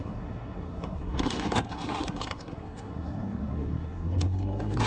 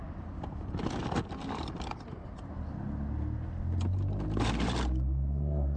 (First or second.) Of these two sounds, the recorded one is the second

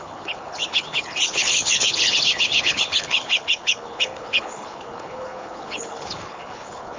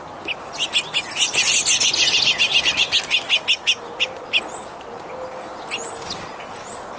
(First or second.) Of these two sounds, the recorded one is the second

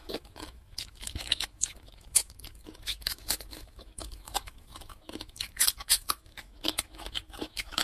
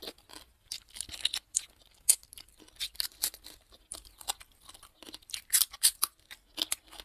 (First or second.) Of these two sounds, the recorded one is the second